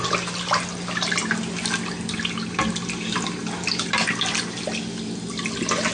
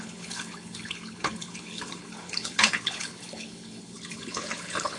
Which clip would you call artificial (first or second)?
second